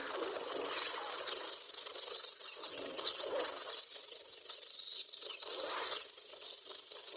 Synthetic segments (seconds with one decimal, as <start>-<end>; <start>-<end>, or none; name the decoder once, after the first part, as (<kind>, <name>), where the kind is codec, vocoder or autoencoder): 4.9-6.3 (vocoder, BigVGAN v2)